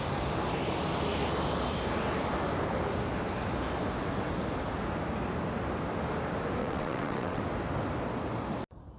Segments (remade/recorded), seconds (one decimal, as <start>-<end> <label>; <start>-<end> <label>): 0.0-6.6 recorded; 6.6-7.4 remade; 7.4-9.0 recorded